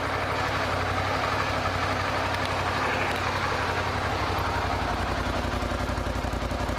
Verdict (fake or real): real